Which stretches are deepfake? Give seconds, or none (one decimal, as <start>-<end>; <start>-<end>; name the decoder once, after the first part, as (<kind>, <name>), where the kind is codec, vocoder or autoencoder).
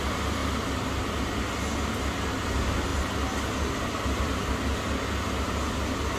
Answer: none